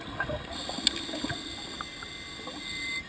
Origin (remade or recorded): recorded